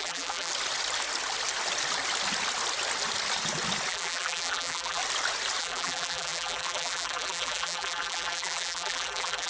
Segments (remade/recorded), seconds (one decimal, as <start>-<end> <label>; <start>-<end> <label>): 0.0-0.5 remade; 0.5-3.9 recorded; 3.9-5.0 remade; 5.0-5.6 recorded; 5.6-9.5 remade